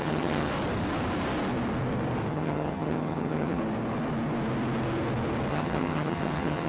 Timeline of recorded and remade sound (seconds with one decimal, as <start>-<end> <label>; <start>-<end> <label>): 0.0-0.5 remade; 0.5-2.3 recorded; 2.3-3.6 remade; 3.6-5.5 recorded; 5.5-6.7 remade